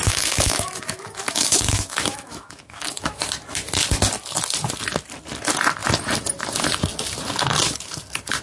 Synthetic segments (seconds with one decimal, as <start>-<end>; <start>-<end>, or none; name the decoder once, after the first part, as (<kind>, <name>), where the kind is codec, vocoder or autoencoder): 0.0-3.2 (autoencoder, DAC-VAE)